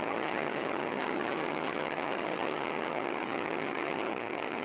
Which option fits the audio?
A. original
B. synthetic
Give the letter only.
B